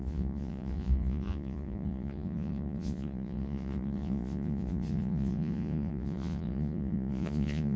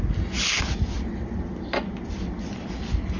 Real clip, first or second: second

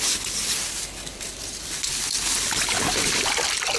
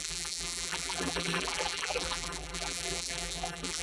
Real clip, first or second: first